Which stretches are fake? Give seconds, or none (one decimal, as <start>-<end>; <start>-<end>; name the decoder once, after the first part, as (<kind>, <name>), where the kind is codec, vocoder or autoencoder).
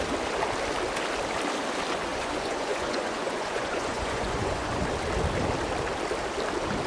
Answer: 2.1-4.8 (vocoder, Vocos)